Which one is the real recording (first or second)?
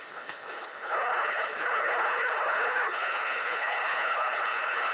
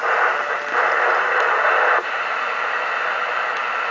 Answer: second